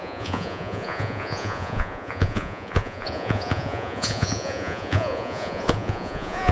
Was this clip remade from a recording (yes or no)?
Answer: yes